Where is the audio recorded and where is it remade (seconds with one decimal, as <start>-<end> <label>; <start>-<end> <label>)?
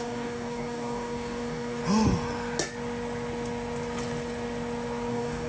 0.0-1.8 remade; 1.8-5.1 recorded; 5.1-5.5 remade